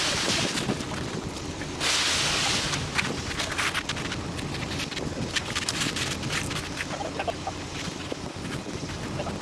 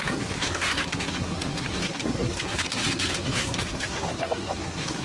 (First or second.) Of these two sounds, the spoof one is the second